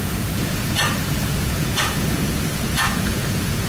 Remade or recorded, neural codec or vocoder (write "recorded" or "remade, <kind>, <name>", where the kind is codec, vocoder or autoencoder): remade, vocoder, Vocos